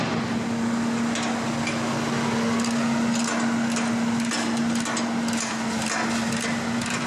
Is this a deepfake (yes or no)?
no